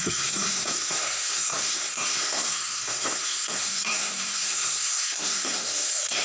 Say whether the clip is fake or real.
fake